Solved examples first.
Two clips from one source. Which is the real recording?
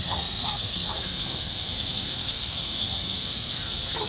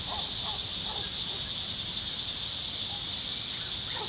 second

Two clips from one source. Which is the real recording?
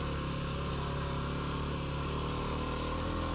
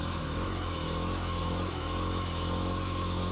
first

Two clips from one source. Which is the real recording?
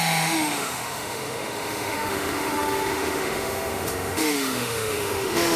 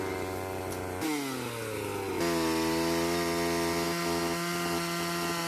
second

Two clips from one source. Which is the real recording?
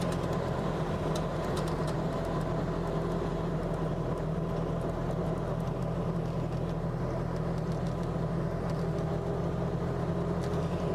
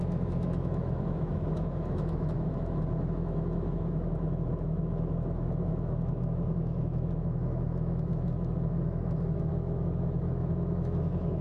first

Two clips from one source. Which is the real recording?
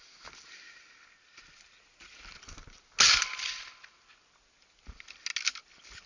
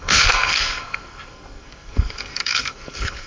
first